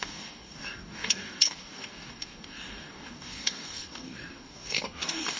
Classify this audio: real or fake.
fake